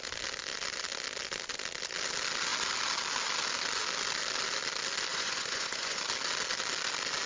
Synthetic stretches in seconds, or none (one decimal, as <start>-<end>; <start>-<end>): 5.1-6.0